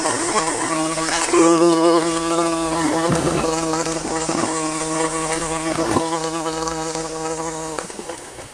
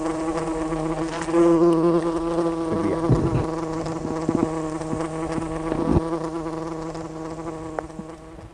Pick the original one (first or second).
second